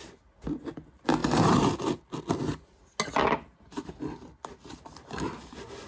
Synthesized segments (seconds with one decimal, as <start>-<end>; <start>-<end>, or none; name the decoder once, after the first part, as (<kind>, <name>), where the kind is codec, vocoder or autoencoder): none